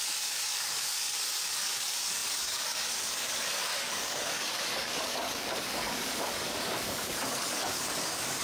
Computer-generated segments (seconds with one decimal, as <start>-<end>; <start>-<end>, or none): 0.0-8.4